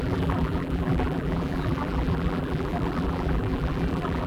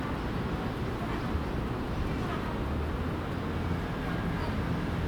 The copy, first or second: first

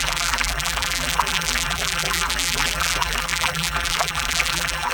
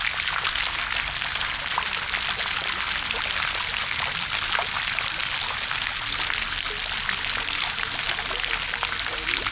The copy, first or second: first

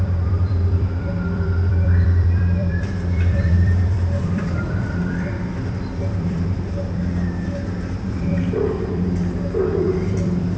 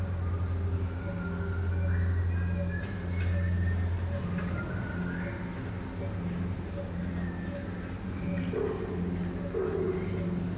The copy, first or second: first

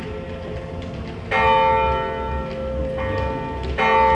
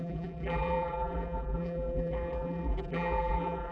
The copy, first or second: second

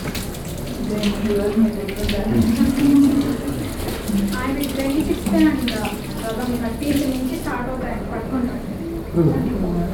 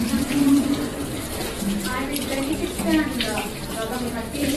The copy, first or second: second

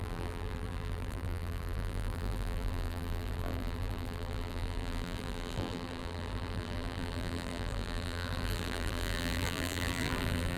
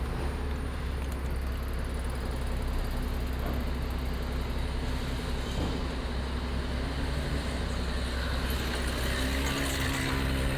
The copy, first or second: first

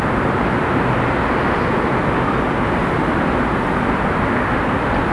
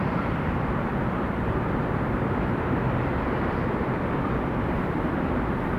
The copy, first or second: second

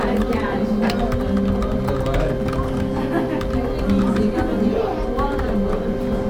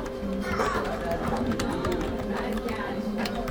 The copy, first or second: second